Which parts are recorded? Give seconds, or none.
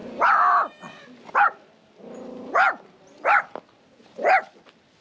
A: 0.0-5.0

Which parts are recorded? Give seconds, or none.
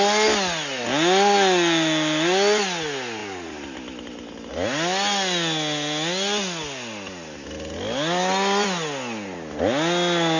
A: 0.0-10.4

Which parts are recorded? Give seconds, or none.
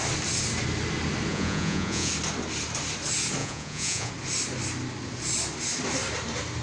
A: 0.0-1.3; 2.1-3.4; 4.1-6.6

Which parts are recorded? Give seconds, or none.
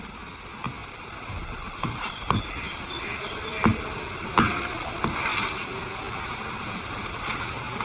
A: 0.0-7.8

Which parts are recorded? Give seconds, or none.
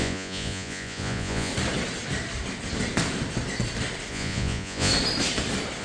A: 1.5-4.1; 4.9-5.8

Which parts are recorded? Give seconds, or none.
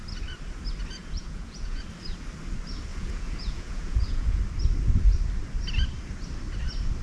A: 0.0-1.0; 1.8-2.9; 4.4-7.0